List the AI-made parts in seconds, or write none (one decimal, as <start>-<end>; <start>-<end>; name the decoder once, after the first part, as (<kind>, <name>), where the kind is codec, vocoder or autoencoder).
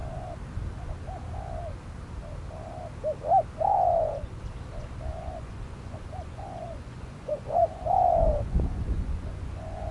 3.7-4.4 (vocoder, Vocos); 5.1-9.9